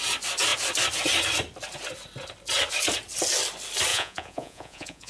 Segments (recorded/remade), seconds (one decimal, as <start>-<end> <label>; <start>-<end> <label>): 0.0-3.9 recorded; 3.9-5.1 remade